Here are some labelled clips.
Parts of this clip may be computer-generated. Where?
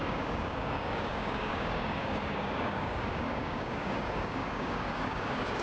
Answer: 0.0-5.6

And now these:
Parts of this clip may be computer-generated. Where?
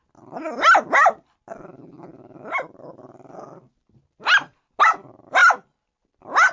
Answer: none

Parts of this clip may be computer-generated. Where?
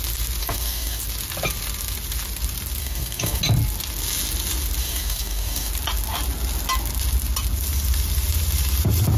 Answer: 0.4-1.0; 2.8-3.4; 4.8-5.7